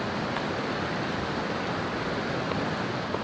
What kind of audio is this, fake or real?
real